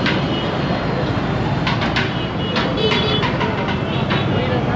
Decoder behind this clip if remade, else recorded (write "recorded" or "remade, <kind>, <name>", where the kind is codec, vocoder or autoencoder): recorded